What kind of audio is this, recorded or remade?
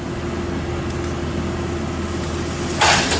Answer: recorded